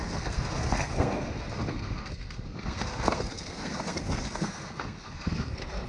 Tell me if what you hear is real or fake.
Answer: fake